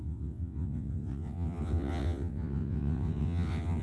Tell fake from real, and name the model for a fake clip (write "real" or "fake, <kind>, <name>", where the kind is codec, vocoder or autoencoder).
fake, vocoder, WaveNeXt